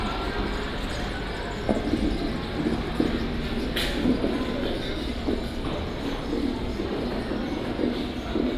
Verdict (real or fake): real